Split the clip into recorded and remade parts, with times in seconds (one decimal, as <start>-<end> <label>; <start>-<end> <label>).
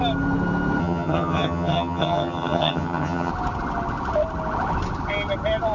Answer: 0.0-0.8 recorded; 0.8-3.3 remade; 3.3-5.7 recorded